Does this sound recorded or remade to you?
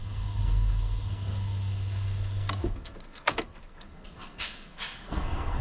remade